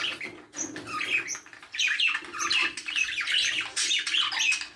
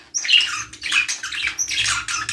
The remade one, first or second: first